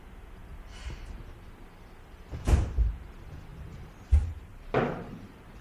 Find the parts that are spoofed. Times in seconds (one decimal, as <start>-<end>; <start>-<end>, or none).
3.5-5.6